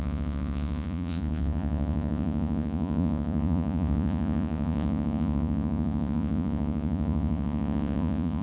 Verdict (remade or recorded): remade